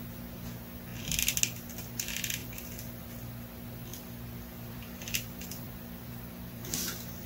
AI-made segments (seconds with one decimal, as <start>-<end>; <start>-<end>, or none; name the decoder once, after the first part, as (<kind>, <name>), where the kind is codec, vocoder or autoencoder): 0.9-1.4 (vocoder, BigVGAN v2); 2.4-3.0; 3.9-7.3